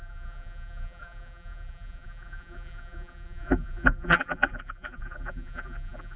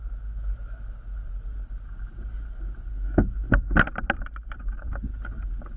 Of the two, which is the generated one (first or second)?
first